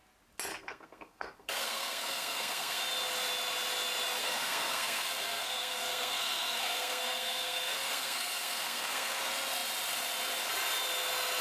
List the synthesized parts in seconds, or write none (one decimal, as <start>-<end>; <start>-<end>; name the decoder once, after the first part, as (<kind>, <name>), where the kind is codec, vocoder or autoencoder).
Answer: 0.5-2.8 (codec, SNAC); 4.2-9.2